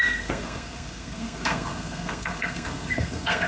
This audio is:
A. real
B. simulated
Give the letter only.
B